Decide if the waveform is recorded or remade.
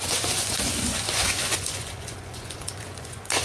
remade